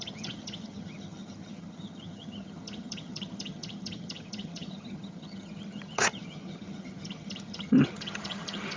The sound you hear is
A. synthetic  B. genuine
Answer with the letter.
A